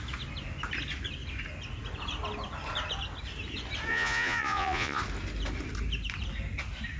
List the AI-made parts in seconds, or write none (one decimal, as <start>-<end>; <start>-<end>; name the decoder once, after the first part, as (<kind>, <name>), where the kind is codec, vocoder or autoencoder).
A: 3.9-5.0 (vocoder, Vocos)